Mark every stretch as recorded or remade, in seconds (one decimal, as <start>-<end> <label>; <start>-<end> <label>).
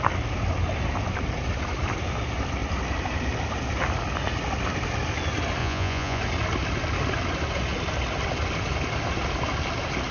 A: 0.0-5.6 recorded; 5.6-6.2 remade; 6.2-10.1 recorded